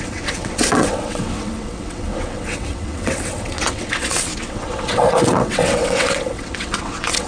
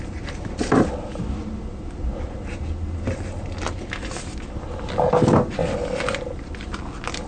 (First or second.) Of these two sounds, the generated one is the first